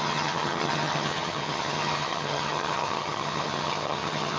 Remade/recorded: remade